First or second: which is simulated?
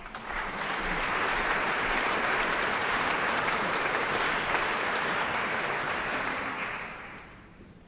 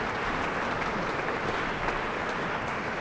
first